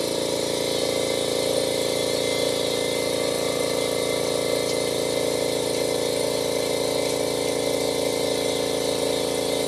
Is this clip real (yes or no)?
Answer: yes